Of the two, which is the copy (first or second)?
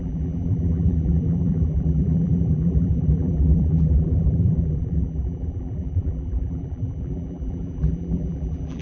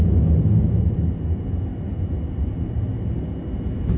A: first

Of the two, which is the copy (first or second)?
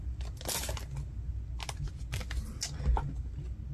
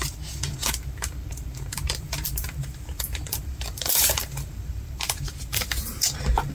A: second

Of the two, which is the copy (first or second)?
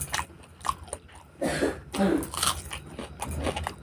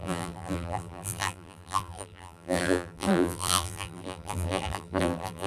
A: second